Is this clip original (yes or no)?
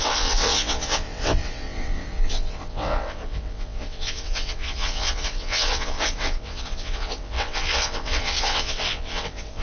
no